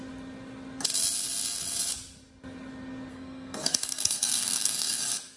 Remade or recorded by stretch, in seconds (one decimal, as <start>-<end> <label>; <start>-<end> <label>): 0.0-3.1 recorded; 3.1-5.0 remade; 5.0-5.4 recorded